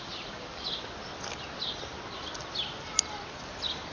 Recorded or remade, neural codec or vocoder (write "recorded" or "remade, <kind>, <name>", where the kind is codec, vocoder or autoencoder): recorded